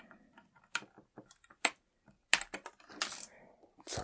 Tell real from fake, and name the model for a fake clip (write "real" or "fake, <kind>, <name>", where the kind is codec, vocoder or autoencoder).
real